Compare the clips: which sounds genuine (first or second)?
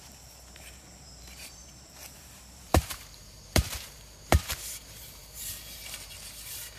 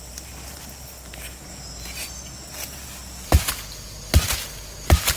second